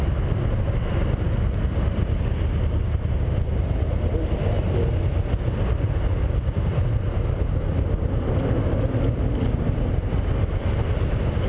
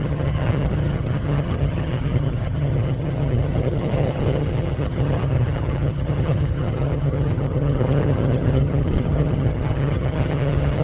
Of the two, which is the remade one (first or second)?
second